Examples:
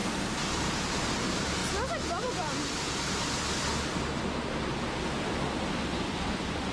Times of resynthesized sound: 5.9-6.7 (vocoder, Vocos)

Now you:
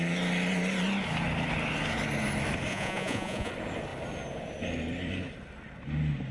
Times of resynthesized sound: 2.7-3.5 (vocoder, Vocos)

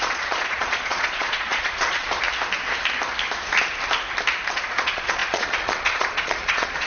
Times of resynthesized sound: 0.0-2.0 (vocoder, Vocos); 4.5-6.9

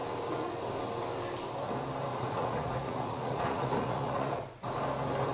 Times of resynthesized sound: 2.1-4.7 (vocoder, Vocos)